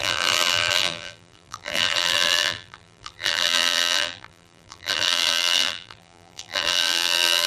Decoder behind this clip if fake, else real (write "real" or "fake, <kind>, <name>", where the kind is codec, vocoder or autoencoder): fake, vocoder, BigVGAN v2